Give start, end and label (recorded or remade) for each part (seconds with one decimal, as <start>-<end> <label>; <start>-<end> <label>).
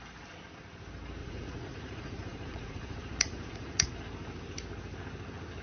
0.0-1.2 recorded; 1.2-3.9 remade; 3.9-5.6 recorded